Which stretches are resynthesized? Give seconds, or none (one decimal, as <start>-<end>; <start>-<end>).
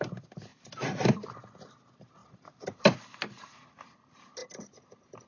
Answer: 0.5-1.7; 2.2-3.2; 4.4-5.3